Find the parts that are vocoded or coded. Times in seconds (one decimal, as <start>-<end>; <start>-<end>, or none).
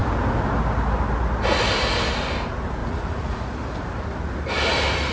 2.8-3.4